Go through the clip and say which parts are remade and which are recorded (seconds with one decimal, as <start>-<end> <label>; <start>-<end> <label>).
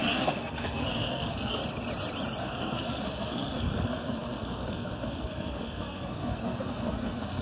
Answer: 0.0-1.6 remade; 1.6-2.4 recorded; 2.4-7.4 remade